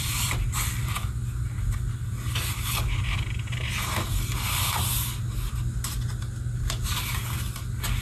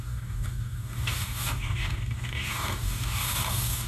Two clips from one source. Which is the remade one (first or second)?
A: second